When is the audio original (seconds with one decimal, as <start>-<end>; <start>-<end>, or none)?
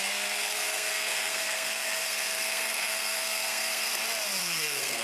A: 3.9-4.4